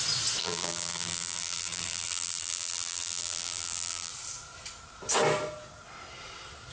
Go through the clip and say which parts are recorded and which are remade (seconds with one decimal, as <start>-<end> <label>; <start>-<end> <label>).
0.0-0.4 recorded; 0.4-4.1 remade; 4.1-6.7 recorded